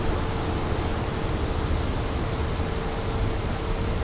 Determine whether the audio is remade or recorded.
recorded